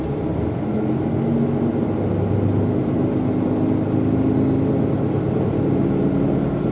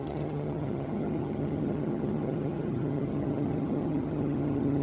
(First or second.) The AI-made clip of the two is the second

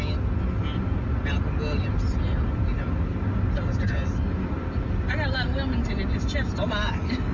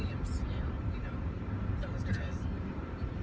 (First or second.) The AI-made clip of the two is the second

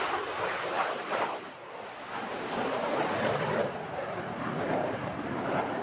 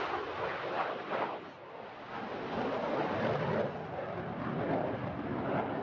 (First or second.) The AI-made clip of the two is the first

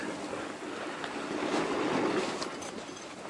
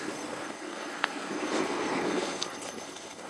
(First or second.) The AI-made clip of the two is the second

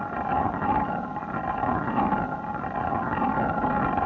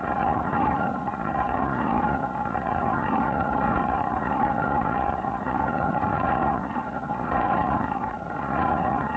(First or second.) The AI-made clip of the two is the second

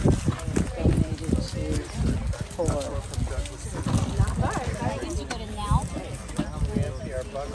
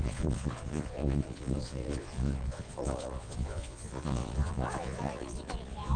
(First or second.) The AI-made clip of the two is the second